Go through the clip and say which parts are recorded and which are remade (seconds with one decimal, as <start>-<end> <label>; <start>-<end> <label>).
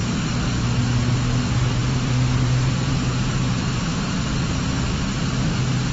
0.0-1.8 recorded; 1.8-5.3 remade; 5.3-5.9 recorded